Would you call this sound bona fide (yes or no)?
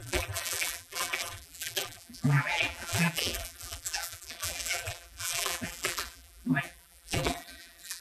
no